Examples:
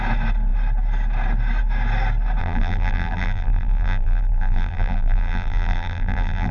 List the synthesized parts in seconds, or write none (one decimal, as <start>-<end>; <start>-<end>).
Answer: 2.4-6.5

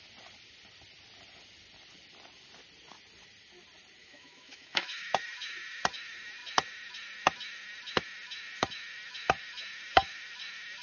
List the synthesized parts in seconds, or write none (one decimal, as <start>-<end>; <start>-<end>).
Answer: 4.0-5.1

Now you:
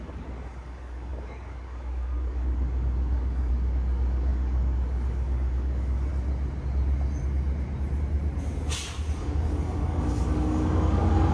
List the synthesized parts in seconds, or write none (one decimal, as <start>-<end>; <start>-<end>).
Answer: 0.0-6.1; 9.2-11.3